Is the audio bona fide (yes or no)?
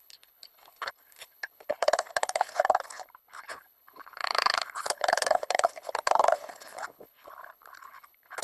no